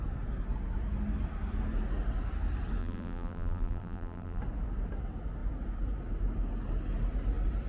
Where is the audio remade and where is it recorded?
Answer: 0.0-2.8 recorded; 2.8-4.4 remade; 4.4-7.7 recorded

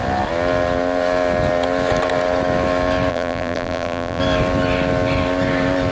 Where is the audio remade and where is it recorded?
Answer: 0.0-3.1 recorded; 3.1-4.2 remade; 4.2-5.9 recorded